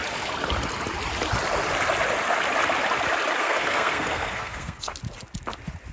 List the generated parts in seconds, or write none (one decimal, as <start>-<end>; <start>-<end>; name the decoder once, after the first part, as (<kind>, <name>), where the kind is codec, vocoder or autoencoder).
3.4-4.9 (codec, SNAC)